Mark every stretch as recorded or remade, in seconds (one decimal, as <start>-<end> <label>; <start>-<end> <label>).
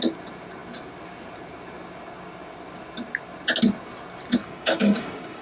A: 0.0-4.4 recorded; 4.4-5.4 remade